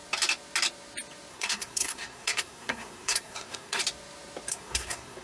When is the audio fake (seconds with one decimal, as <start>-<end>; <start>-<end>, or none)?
1.3-3.8; 4.5-5.2